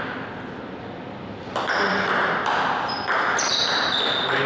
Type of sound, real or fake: real